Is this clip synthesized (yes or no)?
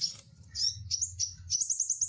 no